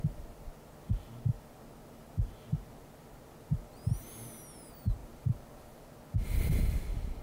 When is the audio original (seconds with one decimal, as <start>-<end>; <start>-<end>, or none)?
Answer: 0.0-5.0; 5.9-7.2